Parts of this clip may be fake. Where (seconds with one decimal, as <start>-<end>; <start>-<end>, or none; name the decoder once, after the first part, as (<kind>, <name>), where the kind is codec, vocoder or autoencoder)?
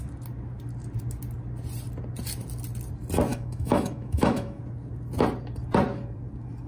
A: 3.3-4.6 (autoencoder, DAC-VAE)